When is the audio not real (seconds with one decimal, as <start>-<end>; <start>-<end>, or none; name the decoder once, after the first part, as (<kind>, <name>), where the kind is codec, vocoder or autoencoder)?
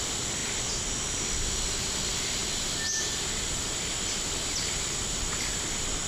none